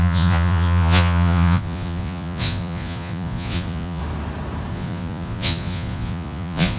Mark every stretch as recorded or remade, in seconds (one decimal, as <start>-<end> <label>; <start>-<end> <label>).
0.0-4.0 remade; 4.0-4.7 recorded; 4.7-6.8 remade